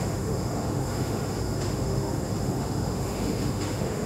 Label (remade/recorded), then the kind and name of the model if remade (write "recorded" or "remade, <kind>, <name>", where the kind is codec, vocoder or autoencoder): remade, autoencoder, DAC-VAE